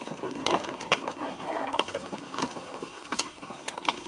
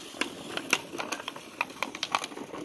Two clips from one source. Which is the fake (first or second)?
first